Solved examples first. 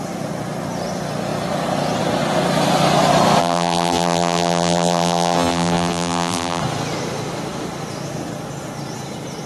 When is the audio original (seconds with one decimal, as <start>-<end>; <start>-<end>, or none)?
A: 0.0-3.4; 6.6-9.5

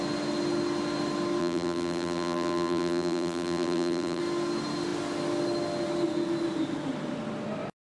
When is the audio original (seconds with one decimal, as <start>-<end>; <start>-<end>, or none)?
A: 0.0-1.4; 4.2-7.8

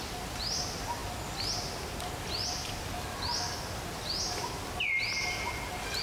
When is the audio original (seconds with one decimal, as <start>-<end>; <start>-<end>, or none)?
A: 0.0-6.0

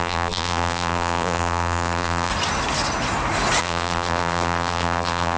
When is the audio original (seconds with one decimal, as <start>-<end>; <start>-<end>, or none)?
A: 2.3-3.6

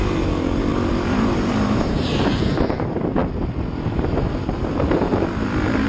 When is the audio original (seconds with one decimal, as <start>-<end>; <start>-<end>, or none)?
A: 3.2-4.3

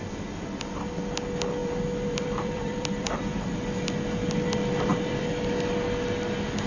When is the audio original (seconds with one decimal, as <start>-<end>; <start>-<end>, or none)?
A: 0.0-1.6; 3.2-4.9; 5.5-6.7